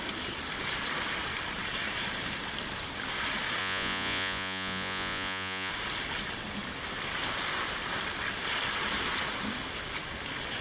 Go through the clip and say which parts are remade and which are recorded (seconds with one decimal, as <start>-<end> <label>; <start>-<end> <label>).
0.0-3.6 recorded; 3.6-5.7 remade; 5.7-10.6 recorded